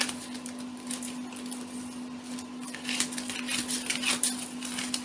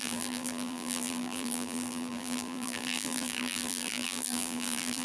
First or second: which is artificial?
second